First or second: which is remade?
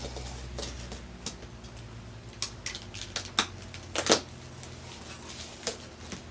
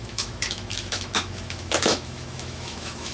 second